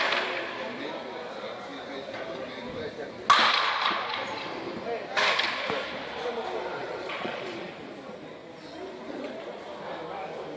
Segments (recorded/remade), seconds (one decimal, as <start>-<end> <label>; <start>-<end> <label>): 0.0-6.8 recorded; 6.8-7.7 remade; 7.7-9.1 recorded; 9.1-9.6 remade; 9.6-10.6 recorded